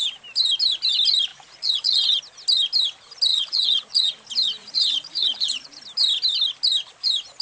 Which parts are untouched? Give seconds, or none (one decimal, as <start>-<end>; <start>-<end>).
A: 0.0-1.3; 2.2-3.3; 4.1-4.6; 5.8-7.4

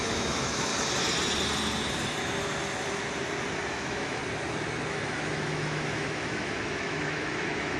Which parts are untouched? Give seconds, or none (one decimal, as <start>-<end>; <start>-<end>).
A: 0.7-3.7; 4.2-4.9